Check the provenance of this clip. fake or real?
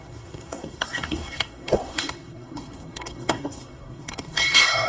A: fake